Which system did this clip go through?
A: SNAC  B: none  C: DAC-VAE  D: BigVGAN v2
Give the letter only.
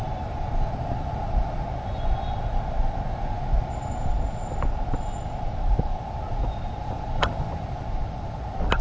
B